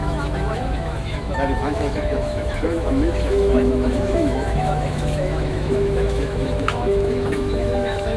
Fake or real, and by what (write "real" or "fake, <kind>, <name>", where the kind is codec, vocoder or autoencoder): fake, autoencoder, DAC-VAE